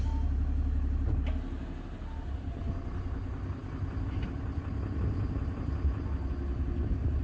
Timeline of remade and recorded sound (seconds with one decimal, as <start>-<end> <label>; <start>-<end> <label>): 0.0-7.2 recorded